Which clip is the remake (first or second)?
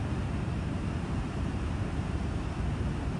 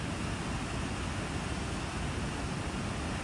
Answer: first